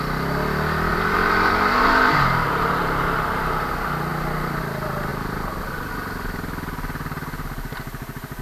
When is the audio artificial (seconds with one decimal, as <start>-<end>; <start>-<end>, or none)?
0.9-3.6; 5.1-5.6